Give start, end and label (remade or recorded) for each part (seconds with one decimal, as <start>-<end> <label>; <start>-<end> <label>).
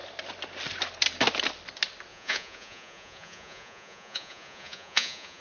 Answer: 0.0-2.1 recorded; 2.1-5.4 remade